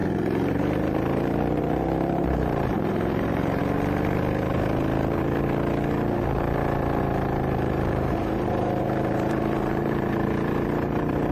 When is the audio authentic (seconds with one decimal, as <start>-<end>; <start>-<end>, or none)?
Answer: 3.6-7.0

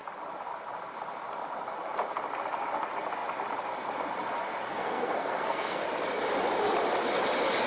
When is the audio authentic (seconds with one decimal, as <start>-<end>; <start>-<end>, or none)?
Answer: 0.0-4.7; 5.8-7.7

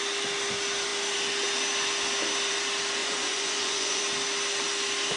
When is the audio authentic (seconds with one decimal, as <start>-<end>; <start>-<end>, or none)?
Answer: 0.0-3.0; 4.0-5.2

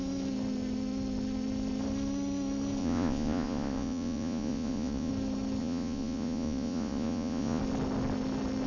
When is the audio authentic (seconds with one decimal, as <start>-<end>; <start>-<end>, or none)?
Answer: 0.0-2.8; 5.1-5.6; 7.6-8.7

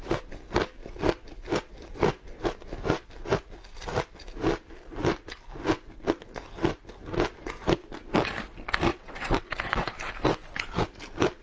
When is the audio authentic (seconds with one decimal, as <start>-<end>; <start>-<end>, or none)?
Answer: 0.0-8.9; 9.9-11.4